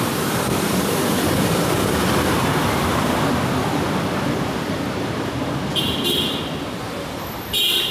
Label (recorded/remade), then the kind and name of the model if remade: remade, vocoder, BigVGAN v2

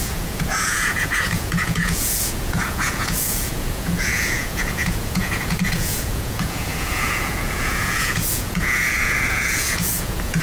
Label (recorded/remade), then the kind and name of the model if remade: remade, vocoder, Vocos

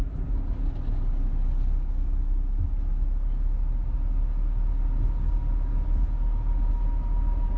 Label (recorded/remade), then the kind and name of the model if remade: recorded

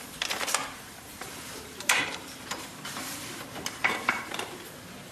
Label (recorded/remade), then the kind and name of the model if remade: remade, vocoder, BigVGAN v2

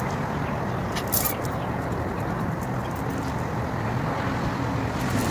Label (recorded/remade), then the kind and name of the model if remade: recorded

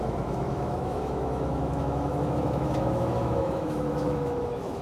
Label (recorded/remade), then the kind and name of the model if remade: remade, autoencoder, DAC-VAE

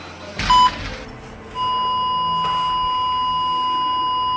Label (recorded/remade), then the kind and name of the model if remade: recorded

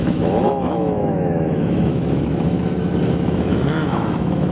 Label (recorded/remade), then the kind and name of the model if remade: remade, autoencoder, DAC-VAE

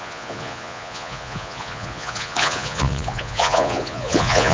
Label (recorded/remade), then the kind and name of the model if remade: remade, vocoder, Vocos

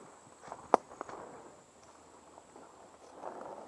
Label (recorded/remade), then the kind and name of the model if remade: recorded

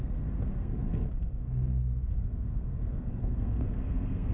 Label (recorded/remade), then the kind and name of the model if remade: remade, codec, SNAC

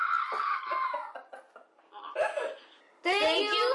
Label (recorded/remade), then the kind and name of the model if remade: recorded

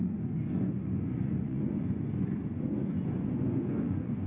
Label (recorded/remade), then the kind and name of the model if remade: remade, vocoder, Vocos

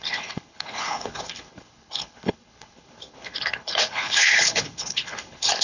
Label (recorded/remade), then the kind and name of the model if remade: remade, codec, HILCodec